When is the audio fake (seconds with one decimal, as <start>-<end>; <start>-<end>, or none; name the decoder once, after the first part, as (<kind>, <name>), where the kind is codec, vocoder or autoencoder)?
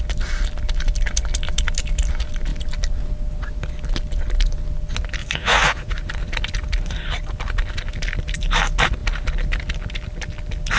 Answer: 5.2-6.0 (vocoder, Vocos)